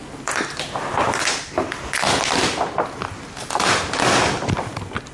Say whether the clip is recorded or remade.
recorded